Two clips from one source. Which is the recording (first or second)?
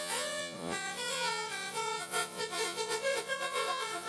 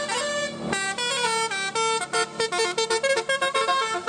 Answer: second